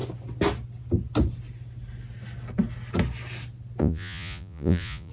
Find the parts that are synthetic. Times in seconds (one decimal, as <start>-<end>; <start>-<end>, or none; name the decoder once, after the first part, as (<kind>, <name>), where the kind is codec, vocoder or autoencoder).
3.8-5.1 (vocoder, Vocos)